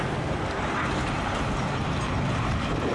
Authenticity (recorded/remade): recorded